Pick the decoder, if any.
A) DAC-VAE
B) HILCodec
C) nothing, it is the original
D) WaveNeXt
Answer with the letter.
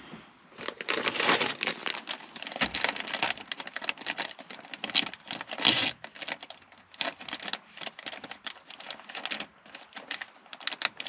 C